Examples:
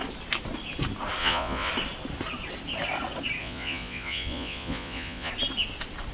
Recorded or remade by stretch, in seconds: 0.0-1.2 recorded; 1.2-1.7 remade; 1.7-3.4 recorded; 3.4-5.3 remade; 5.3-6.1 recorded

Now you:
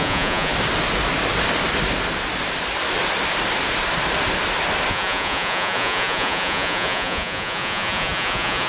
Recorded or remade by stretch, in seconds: 0.0-0.5 remade; 0.5-4.9 recorded; 4.9-8.7 remade

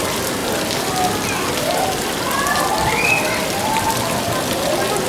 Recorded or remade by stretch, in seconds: 0.0-5.1 recorded

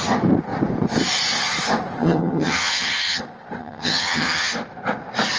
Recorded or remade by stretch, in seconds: 0.0-2.0 recorded; 2.0-3.2 remade; 3.2-3.6 recorded; 3.6-4.5 remade; 4.5-5.4 recorded

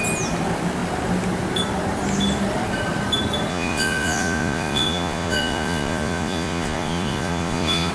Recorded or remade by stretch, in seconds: 0.0-3.5 recorded; 3.5-7.9 remade

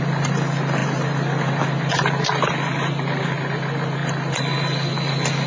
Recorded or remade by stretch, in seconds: 0.0-5.5 recorded

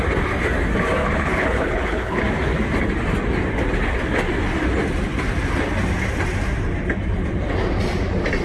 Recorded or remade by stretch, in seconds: 0.0-1.0 recorded; 1.0-2.2 remade; 2.2-8.4 recorded

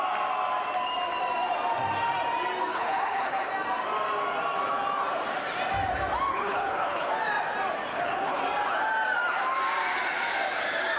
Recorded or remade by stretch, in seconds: 0.0-2.7 recorded; 2.7-3.5 remade; 3.5-6.3 recorded; 6.3-7.1 remade; 7.1-7.9 recorded; 7.9-8.4 remade; 8.4-11.0 recorded